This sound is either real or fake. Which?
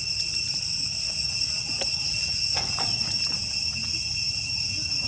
real